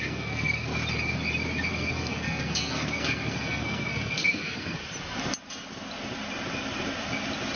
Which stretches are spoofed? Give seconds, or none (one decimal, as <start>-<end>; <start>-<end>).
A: 0.0-0.7; 1.7-4.8